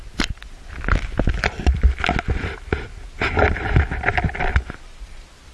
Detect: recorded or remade recorded